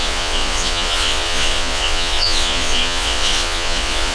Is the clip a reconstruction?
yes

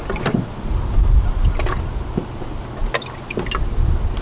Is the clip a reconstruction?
no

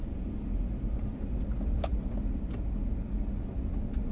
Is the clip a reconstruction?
no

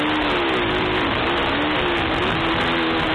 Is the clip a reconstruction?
no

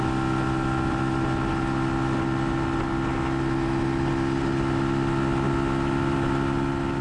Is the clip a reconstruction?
no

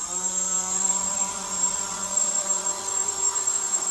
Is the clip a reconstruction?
yes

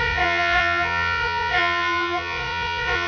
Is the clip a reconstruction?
yes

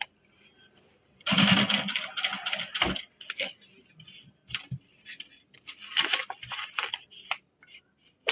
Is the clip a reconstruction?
no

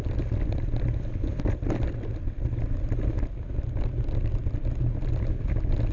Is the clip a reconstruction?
no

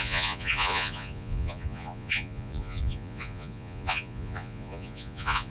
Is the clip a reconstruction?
yes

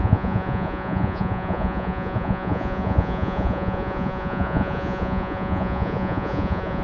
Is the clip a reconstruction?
yes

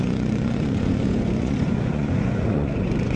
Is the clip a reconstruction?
yes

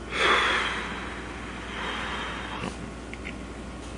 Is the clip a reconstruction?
no